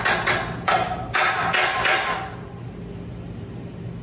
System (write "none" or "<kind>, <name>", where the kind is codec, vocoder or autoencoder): none